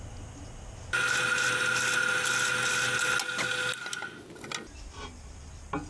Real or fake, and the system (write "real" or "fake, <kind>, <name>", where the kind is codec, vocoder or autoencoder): real